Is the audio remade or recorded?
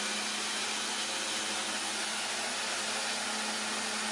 recorded